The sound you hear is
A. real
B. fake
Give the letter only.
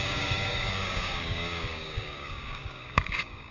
B